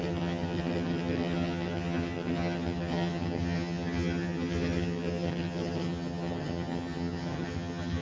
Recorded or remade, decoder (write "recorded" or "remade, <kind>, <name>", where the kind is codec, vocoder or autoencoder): remade, vocoder, HiFi-GAN